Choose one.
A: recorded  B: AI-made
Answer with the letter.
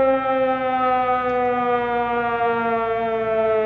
A